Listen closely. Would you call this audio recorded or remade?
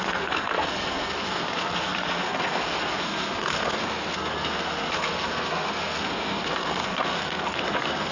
remade